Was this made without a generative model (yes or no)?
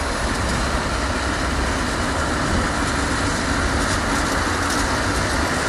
yes